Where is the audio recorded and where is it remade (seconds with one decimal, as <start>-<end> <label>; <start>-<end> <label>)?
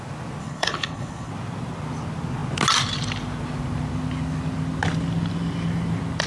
0.0-0.4 recorded; 0.4-1.3 remade; 1.3-6.3 recorded